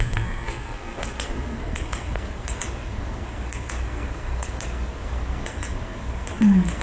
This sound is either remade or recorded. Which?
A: remade